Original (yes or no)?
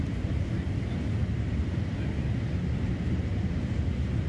yes